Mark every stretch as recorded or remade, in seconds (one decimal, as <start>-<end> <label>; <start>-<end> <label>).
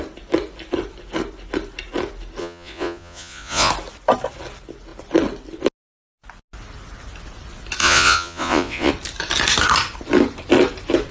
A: 0.0-2.4 recorded; 2.4-3.7 remade; 3.7-7.8 recorded; 7.8-8.9 remade; 8.9-11.1 recorded